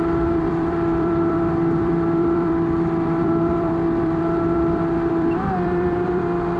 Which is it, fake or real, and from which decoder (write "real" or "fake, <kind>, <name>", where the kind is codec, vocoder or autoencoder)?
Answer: fake, vocoder, BigVGAN v2